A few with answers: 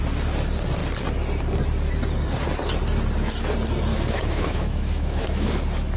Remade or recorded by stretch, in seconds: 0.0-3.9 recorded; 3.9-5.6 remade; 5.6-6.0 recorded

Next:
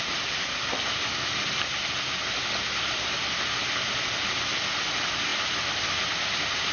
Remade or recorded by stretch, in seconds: 0.0-6.7 recorded

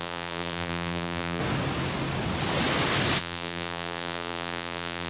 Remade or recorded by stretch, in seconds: 0.0-1.4 remade; 1.4-3.2 recorded; 3.2-5.1 remade

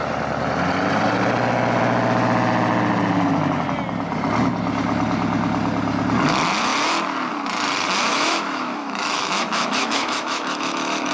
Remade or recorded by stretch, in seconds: 0.0-8.1 recorded; 8.1-11.1 remade

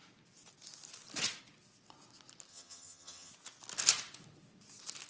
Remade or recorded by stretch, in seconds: 0.0-2.5 recorded; 2.5-3.3 remade; 3.3-5.1 recorded

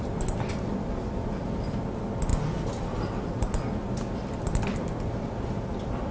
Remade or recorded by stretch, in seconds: 0.0-6.1 recorded

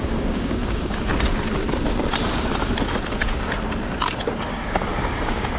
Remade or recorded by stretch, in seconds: 0.0-1.1 remade; 1.1-4.5 recorded; 4.5-5.6 remade

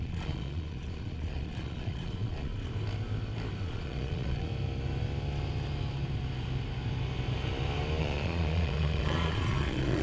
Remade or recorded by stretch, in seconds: 0.0-2.5 remade; 2.5-3.6 recorded; 3.6-4.5 remade; 4.5-8.0 recorded; 8.0-10.0 remade